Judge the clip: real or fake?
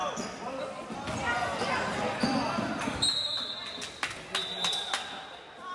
real